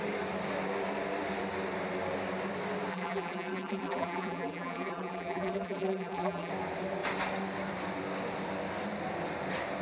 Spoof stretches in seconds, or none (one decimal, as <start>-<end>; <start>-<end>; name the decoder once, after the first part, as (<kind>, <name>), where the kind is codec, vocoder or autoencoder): 2.9-6.5 (vocoder, BigVGAN v2)